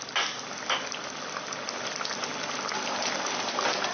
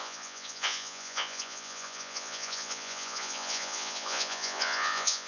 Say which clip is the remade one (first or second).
second